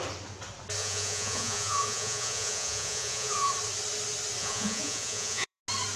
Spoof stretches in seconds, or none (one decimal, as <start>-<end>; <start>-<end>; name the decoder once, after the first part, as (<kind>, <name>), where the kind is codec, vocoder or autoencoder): 0.8-3.5 (vocoder, Vocos); 4.4-5.6